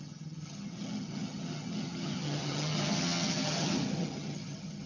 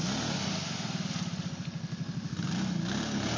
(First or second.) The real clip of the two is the second